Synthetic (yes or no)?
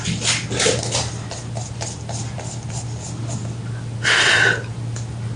no